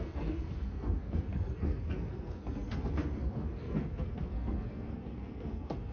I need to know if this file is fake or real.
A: fake